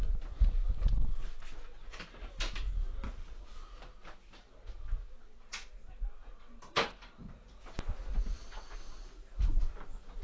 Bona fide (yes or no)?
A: yes